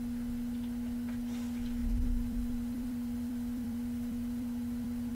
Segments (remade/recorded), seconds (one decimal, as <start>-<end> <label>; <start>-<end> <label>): 0.0-1.8 recorded; 1.8-5.1 remade